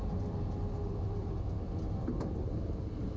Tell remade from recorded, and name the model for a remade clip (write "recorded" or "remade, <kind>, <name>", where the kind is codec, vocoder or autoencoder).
remade, vocoder, BigVGAN v2